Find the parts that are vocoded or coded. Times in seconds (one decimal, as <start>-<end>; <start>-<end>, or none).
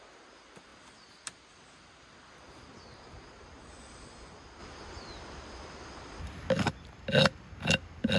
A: none